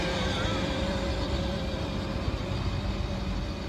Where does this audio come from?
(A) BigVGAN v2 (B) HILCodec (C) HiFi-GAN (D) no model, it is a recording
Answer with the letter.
D